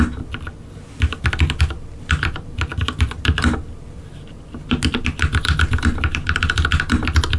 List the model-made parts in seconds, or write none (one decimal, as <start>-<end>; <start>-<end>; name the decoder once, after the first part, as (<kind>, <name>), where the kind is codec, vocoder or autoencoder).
none